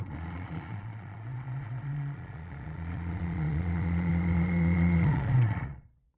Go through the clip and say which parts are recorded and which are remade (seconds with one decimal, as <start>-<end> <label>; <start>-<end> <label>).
0.0-6.2 remade